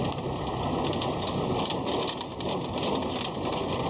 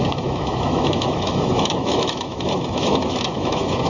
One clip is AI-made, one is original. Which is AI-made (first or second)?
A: second